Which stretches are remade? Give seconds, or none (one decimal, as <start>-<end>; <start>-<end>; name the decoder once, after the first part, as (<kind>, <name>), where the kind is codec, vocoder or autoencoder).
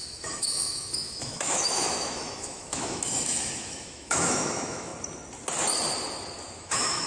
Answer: 0.0-4.9 (autoencoder, DAC-VAE); 6.6-7.1